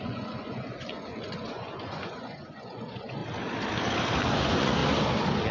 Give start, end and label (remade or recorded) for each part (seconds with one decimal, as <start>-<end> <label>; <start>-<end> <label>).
0.0-3.2 remade; 3.2-4.3 recorded; 4.3-4.8 remade; 4.8-5.5 recorded